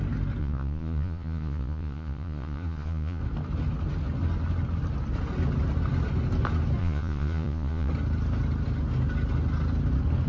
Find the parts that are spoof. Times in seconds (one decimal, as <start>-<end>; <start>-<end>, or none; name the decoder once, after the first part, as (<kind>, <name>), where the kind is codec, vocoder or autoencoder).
0.4-3.2 (vocoder, Vocos); 6.8-7.9

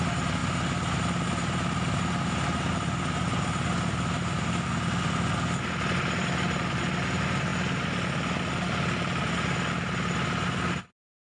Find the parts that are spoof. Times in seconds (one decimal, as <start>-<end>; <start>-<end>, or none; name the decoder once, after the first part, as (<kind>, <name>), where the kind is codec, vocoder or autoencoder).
none